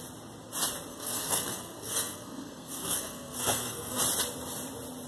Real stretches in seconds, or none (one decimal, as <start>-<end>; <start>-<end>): 0.0-0.9; 4.0-5.1